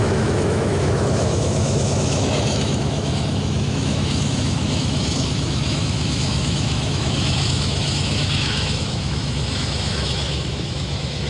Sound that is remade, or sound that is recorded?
remade